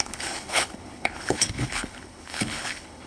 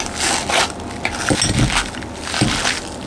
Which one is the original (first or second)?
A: second